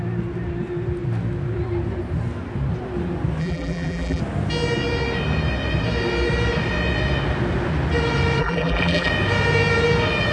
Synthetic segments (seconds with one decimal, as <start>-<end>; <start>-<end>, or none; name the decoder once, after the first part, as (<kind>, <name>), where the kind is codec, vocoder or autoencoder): 3.4-4.2 (vocoder, BigVGAN v2); 8.4-9.1